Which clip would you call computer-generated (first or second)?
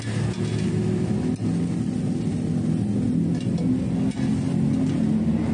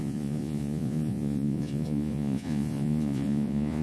second